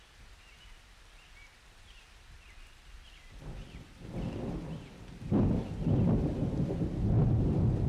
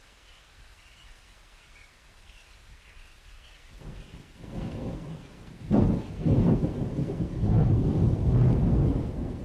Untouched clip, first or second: first